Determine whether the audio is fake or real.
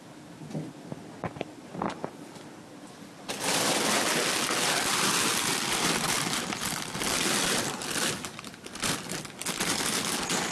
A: real